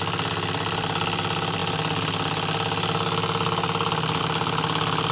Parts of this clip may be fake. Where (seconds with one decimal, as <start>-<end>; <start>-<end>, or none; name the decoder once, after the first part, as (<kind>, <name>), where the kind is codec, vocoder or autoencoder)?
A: none

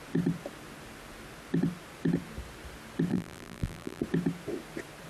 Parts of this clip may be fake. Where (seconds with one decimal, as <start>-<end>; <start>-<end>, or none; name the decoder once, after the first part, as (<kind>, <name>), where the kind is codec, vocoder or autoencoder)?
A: 3.1-4.0 (vocoder, BigVGAN v2)